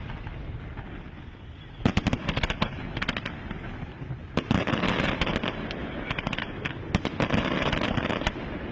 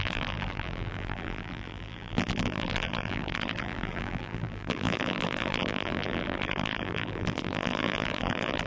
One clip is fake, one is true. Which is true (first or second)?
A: first